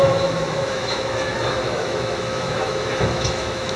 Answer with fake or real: fake